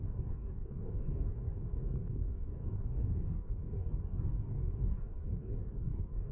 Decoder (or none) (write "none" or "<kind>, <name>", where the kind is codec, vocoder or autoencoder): codec, DAC